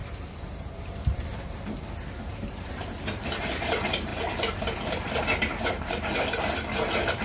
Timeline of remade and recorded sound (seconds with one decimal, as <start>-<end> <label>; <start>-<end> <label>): 0.0-4.1 remade; 4.1-5.7 recorded; 5.7-7.2 remade